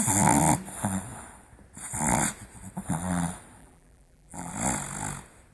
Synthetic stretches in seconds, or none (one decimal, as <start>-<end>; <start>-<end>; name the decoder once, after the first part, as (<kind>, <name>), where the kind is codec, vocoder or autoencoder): 3.6-4.5 (vocoder, BigVGAN v2)

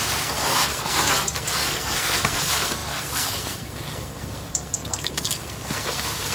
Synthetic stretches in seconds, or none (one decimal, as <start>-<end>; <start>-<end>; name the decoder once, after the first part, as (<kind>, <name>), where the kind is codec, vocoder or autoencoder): 0.0-6.3 (codec, SNAC)

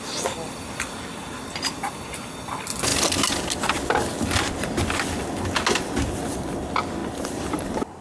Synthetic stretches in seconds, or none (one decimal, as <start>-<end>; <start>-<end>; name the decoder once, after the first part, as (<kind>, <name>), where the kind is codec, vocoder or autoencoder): none

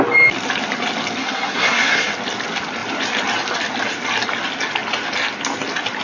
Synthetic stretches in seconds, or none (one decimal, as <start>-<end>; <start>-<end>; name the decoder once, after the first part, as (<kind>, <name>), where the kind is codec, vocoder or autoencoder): 1.2-2.1 (codec, SNAC)

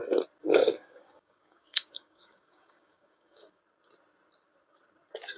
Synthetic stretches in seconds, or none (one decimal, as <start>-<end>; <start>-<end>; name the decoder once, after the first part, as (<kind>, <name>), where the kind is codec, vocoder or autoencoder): 0.4-3.6 (codec, DAC)

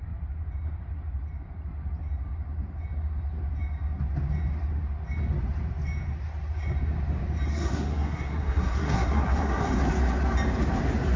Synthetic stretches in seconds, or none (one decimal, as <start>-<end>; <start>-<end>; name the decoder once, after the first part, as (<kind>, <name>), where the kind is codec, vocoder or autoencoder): 7.5-9.7 (codec, SNAC)

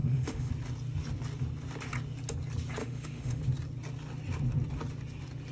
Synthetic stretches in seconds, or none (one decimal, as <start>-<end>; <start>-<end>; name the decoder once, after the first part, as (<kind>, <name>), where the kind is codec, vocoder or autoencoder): 0.0-0.5 (autoencoder, DAC-VAE); 2.8-3.4

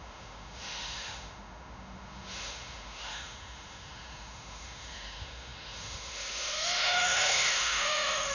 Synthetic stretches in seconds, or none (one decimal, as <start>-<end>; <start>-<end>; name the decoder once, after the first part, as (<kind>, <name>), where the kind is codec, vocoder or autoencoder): 0.0-8.3 (autoencoder, DAC-VAE)